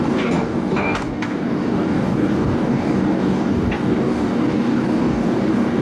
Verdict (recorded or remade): remade